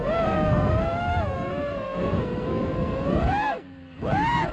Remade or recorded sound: remade